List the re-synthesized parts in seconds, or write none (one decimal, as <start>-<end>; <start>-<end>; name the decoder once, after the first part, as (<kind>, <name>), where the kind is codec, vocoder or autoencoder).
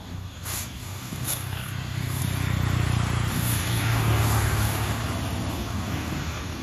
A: 0.0-2.2 (codec, DAC); 3.3-5.0; 5.5-6.6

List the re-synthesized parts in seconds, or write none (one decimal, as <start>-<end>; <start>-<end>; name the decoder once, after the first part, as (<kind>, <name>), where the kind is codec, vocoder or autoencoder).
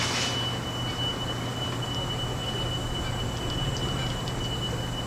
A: none